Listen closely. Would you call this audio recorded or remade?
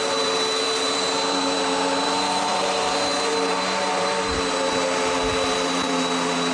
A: remade